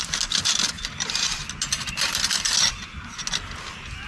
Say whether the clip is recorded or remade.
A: recorded